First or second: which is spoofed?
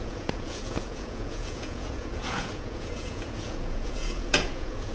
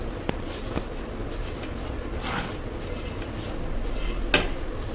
first